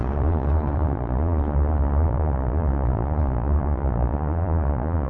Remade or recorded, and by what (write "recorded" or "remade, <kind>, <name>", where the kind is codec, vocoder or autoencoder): remade, vocoder, Vocos